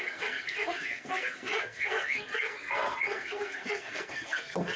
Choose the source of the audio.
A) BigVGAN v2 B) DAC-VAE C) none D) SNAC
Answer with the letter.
D